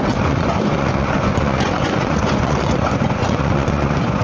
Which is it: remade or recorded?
remade